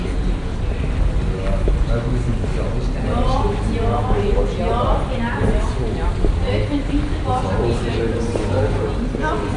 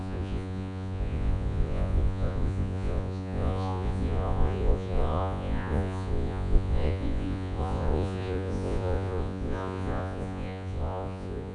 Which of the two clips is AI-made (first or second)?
second